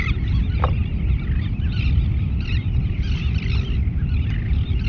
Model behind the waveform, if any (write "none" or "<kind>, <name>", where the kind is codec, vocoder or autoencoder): none